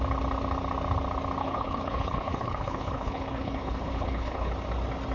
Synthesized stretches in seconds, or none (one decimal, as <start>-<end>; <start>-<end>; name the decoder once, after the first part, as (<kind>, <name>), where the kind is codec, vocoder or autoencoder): 1.4-4.5 (codec, HILCodec)